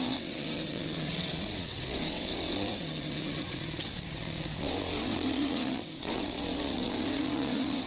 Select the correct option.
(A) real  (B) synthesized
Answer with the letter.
B